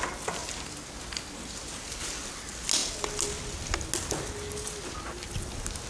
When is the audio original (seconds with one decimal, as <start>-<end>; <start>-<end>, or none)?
0.0-5.9